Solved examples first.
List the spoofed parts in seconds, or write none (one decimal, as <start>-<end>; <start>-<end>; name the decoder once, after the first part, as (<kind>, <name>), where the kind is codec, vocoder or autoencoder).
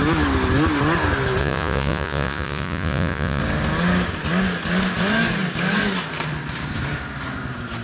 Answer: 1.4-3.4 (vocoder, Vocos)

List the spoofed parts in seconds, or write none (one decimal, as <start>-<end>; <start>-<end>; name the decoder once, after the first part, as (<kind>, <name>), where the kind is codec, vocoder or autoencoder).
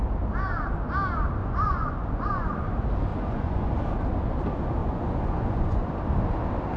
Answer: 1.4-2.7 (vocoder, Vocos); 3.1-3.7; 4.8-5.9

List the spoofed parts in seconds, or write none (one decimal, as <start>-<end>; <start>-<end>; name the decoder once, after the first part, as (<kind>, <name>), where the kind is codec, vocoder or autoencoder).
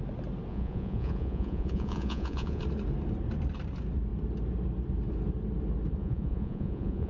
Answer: 0.5-2.6 (vocoder, Vocos); 6.0-7.1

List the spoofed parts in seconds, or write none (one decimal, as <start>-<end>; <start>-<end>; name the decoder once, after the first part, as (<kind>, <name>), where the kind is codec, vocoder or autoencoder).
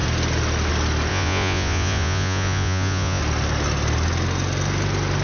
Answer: 1.1-3.2 (vocoder, Vocos)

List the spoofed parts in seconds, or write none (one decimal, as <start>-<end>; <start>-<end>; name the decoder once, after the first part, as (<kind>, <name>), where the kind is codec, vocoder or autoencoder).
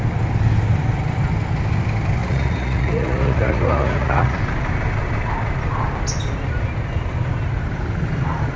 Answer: 2.2-4.4 (vocoder, Vocos)